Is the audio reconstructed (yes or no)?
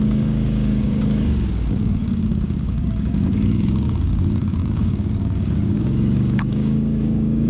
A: yes